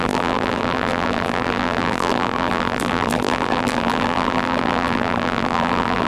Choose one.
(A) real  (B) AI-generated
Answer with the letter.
B